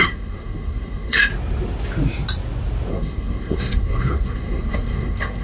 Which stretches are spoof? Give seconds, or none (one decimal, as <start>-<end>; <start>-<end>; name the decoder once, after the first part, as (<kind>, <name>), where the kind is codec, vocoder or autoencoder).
0.0-1.3 (codec, SNAC); 2.9-5.4